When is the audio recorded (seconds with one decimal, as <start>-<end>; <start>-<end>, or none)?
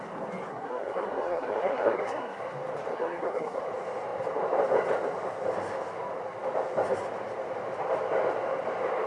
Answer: 0.0-0.5; 2.4-2.9; 3.6-9.1